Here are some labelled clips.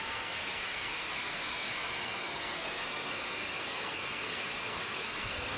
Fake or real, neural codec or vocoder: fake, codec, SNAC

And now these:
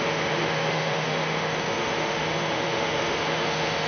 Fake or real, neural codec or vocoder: fake, autoencoder, DAC-VAE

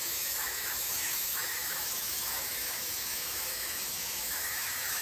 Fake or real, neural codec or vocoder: fake, autoencoder, DAC-VAE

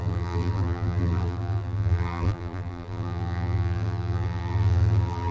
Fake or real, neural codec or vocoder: fake, vocoder, BigVGAN v2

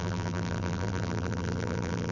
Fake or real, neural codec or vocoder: fake, vocoder, BigVGAN v2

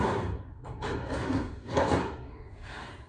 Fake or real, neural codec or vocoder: fake, codec, SNAC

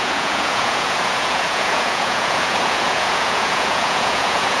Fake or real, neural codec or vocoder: fake, vocoder, Vocos